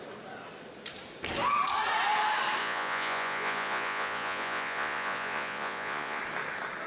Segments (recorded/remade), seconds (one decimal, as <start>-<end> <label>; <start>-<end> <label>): 0.0-2.6 recorded; 2.6-6.2 remade; 6.2-6.9 recorded